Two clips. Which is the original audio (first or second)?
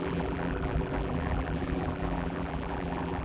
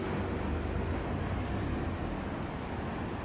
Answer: second